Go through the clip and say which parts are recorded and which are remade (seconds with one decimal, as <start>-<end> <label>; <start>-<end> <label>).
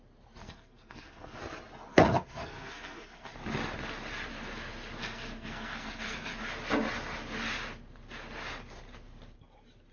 0.0-0.4 recorded; 0.4-1.4 remade; 1.4-1.9 recorded; 1.9-3.3 remade; 3.3-5.0 recorded; 5.0-6.4 remade; 6.4-9.9 recorded